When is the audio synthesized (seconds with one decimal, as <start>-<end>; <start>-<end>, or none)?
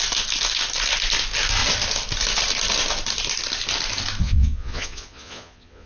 4.2-5.9